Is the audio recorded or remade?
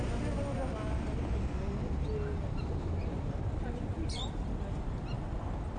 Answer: recorded